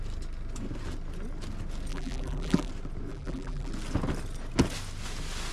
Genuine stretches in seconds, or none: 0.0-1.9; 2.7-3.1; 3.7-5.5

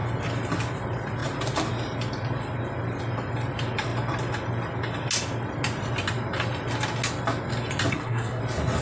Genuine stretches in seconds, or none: 0.0-7.9; 8.4-8.8

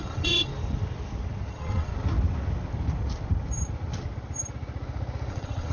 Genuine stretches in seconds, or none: 0.5-1.5; 1.9-5.3

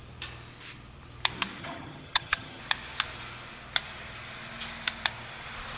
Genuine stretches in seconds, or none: 0.0-1.6; 2.6-5.8

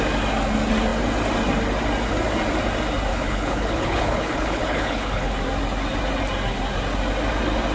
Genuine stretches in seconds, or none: 0.0-3.1; 5.3-7.7

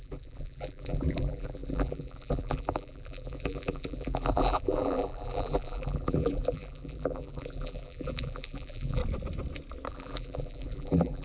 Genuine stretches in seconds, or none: 9.0-9.9

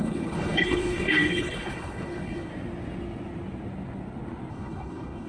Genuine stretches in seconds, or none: 2.5-4.5